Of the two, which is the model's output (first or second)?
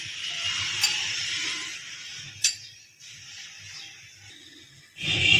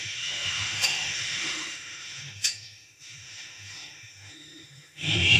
second